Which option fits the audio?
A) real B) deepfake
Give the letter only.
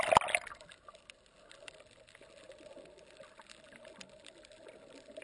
A